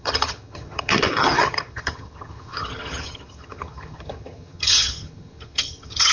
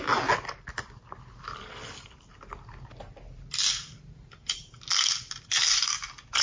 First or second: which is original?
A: second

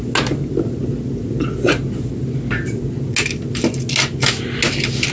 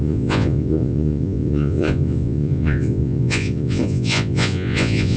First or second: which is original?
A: first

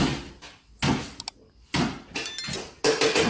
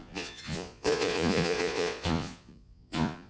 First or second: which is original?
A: first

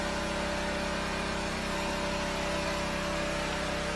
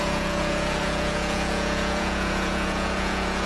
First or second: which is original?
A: first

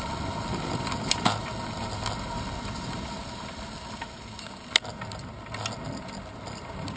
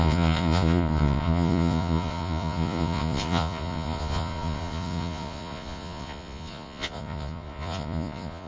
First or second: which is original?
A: first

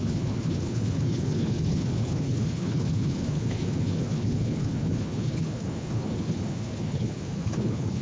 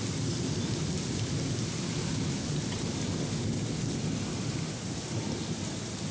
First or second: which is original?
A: second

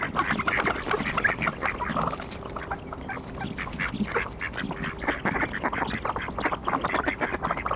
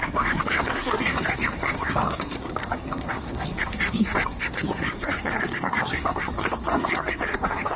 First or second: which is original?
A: first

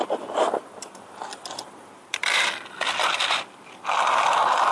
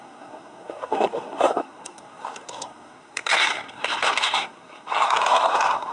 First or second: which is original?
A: first